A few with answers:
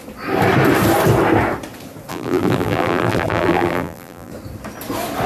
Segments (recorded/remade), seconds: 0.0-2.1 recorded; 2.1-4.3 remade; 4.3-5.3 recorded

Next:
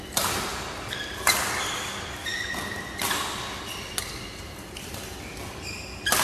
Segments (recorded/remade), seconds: 0.0-0.5 recorded; 0.5-1.2 remade; 1.2-6.2 recorded

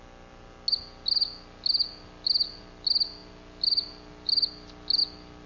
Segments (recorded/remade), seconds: 0.0-5.5 recorded

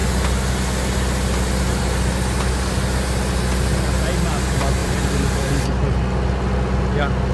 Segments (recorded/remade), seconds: 0.0-4.8 recorded; 4.8-5.5 remade; 5.5-7.3 recorded

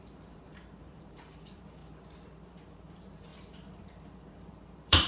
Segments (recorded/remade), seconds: 0.0-1.8 remade; 1.8-2.7 recorded; 2.7-5.1 remade

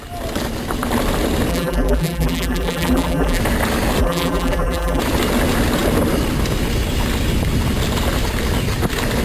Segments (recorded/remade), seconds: 0.0-1.5 recorded; 1.5-3.4 remade; 3.4-4.0 recorded; 4.0-5.0 remade; 5.0-9.2 recorded